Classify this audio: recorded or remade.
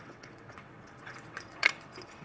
remade